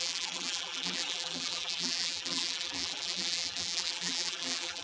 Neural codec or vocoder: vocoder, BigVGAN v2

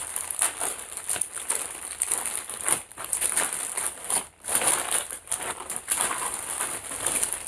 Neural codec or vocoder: none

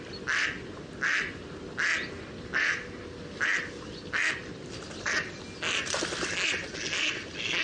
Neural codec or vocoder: none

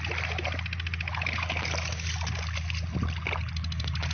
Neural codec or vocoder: none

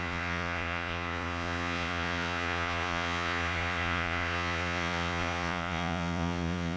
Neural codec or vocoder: vocoder, Vocos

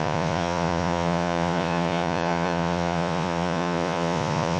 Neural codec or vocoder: vocoder, Vocos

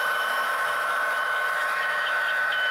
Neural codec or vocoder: autoencoder, DAC-VAE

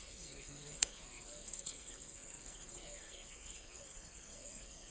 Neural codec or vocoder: codec, SNAC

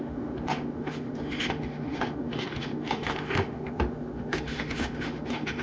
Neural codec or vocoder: autoencoder, DAC-VAE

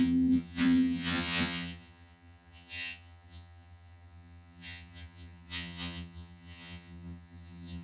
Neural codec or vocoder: vocoder, HiFi-GAN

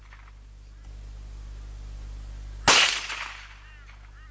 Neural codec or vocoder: none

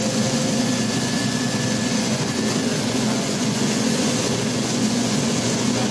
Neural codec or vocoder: vocoder, Vocos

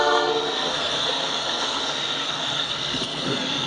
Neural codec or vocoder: codec, SNAC